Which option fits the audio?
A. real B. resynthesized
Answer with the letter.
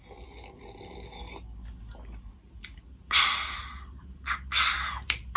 A